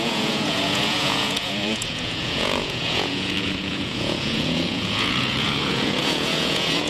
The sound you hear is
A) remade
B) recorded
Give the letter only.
A